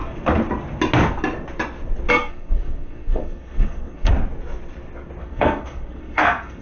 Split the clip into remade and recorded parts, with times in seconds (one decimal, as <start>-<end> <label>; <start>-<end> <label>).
0.0-2.1 recorded; 2.1-4.1 remade; 4.1-5.2 recorded; 5.2-6.6 remade